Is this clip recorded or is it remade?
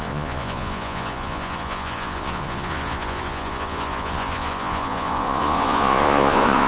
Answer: remade